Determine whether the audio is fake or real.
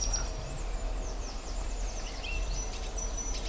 fake